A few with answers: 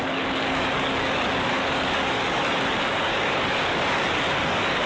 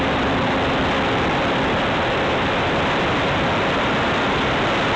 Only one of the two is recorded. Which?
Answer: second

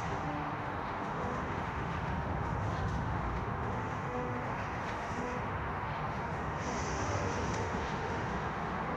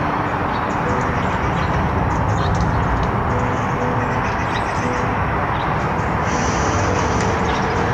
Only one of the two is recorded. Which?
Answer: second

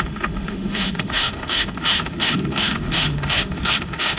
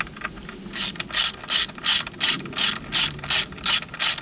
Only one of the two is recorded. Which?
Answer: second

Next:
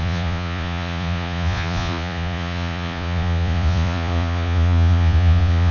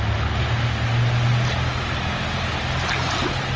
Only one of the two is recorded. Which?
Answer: second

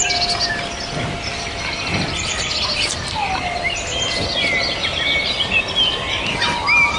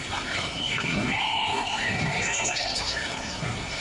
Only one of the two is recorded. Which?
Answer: first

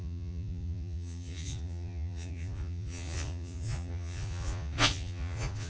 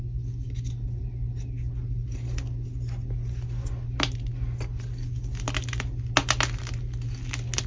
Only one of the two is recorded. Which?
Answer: second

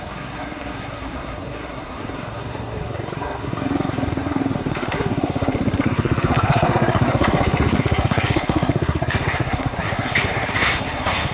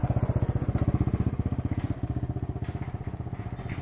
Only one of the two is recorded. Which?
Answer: second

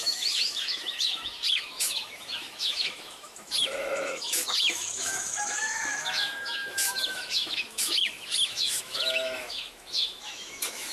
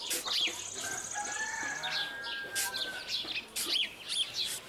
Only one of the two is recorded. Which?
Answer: second